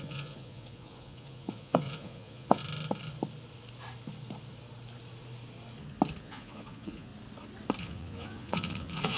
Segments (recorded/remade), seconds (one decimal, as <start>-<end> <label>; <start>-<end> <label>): 0.0-2.6 remade; 2.6-6.2 recorded; 6.2-7.1 remade; 7.1-7.8 recorded; 7.8-9.2 remade